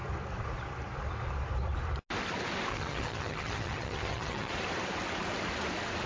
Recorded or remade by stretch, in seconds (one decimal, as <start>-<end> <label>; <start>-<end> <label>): 0.0-2.7 recorded; 2.7-4.5 remade; 4.5-6.1 recorded